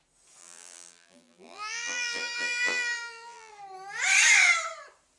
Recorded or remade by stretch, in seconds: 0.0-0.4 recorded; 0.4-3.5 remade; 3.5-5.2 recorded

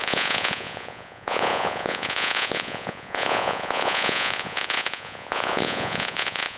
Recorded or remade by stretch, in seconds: 0.0-6.6 remade

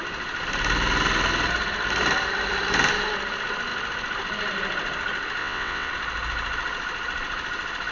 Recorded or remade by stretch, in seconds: 0.0-5.4 recorded; 5.4-5.9 remade; 5.9-7.9 recorded

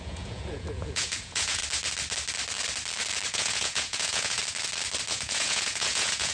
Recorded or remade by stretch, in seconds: 0.0-1.6 remade; 1.6-3.3 recorded; 3.3-4.4 remade; 4.4-5.1 recorded; 5.1-6.3 remade

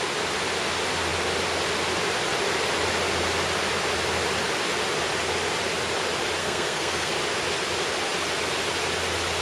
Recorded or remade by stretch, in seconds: 0.0-6.4 recorded; 6.4-7.1 remade; 7.1-9.4 recorded

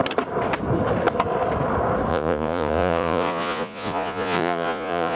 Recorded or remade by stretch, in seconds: 0.0-2.1 recorded; 2.1-5.2 remade

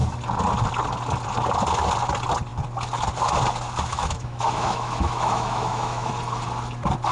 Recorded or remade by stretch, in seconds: 0.0-3.9 recorded; 3.9-6.1 remade; 6.1-7.1 recorded